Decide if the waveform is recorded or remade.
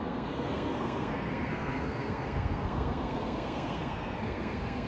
remade